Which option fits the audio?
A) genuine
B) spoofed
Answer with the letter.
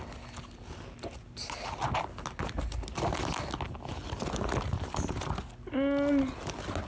A